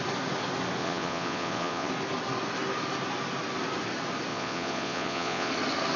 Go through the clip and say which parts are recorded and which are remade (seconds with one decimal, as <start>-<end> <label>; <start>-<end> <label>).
0.0-0.8 recorded; 0.8-1.9 remade; 1.9-4.3 recorded; 4.3-5.5 remade; 5.5-6.0 recorded